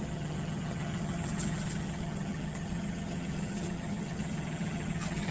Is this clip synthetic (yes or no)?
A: yes